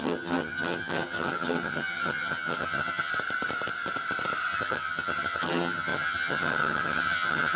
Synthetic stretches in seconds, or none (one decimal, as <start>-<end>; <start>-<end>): 0.0-3.1; 4.5-7.6